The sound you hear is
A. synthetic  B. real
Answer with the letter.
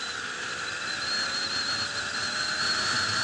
B